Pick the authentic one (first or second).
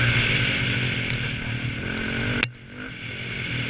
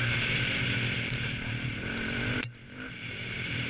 first